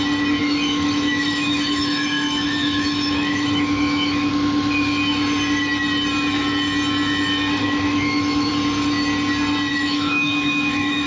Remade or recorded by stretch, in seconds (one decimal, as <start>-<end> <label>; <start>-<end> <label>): 0.0-0.4 recorded; 0.4-4.3 remade; 4.3-7.6 recorded; 7.6-8.5 remade; 8.5-9.7 recorded; 9.7-11.1 remade